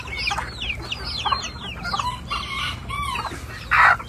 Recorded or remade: recorded